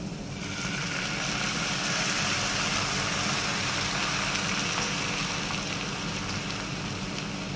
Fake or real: fake